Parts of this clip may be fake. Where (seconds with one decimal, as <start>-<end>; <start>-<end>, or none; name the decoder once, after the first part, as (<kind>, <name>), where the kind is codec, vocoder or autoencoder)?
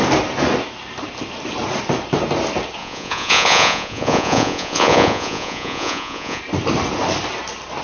2.8-6.4 (vocoder, Vocos)